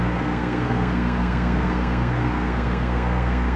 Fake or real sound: fake